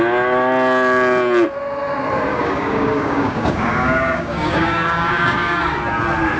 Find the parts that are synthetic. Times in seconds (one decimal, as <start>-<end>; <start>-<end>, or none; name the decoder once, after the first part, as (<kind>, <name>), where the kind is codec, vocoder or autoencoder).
2.3-5.6 (codec, DAC)